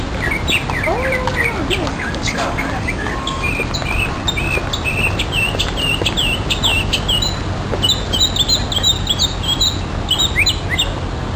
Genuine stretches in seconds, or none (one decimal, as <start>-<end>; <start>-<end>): 0.0-1.9; 3.5-11.4